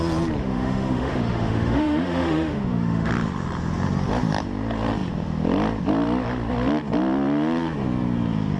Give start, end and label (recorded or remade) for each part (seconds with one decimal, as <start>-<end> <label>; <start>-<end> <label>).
0.0-0.4 recorded; 0.4-3.1 remade; 3.1-8.6 recorded